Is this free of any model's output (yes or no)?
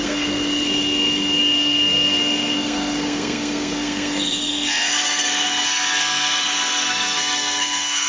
no